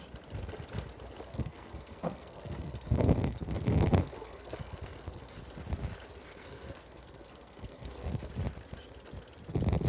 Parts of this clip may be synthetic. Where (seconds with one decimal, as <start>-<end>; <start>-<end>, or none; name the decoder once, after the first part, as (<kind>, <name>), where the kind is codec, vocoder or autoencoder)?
1.3-5.4 (codec, SNAC); 6.2-8.3